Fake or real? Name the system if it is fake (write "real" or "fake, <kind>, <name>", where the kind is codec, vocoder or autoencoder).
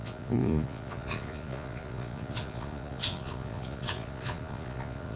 fake, vocoder, Vocos